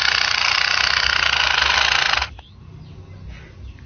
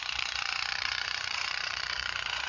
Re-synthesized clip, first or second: second